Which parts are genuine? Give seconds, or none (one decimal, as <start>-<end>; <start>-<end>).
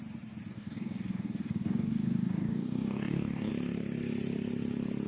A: 0.0-0.5; 3.5-5.1